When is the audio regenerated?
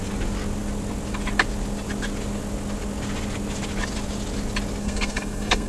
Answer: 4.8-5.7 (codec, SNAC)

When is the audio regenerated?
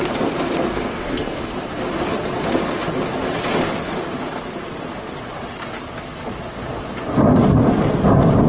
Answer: 0.7-1.4 (codec, SNAC)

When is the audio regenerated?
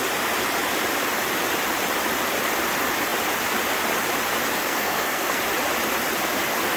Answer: 4.6-5.4 (codec, SNAC)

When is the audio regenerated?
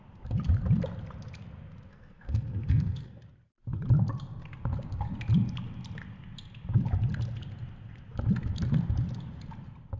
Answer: 1.9-3.2 (codec, SNAC)